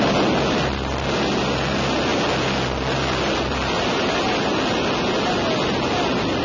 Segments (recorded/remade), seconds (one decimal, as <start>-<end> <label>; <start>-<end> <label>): 0.0-6.4 recorded